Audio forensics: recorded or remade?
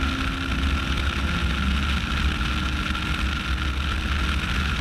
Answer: recorded